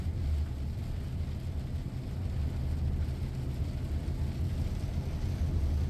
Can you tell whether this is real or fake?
real